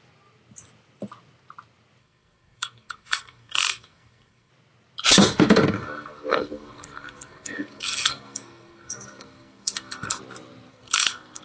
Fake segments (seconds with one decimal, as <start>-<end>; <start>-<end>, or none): 2.0-4.5; 5.2-10.2; 10.7-11.4